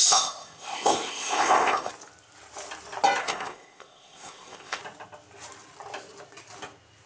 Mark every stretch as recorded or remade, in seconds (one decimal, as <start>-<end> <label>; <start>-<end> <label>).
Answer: 0.0-1.9 remade; 1.9-3.2 recorded; 3.2-4.8 remade; 4.8-7.1 recorded